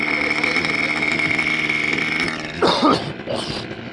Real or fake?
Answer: real